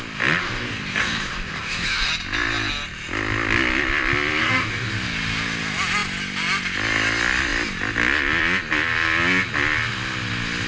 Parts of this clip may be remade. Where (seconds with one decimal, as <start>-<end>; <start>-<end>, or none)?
0.4-2.1; 4.4-4.9